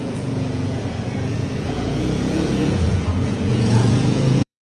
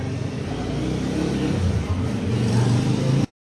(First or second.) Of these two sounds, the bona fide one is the second